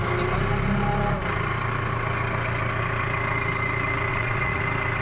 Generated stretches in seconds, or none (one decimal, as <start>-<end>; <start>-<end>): 4.1-4.6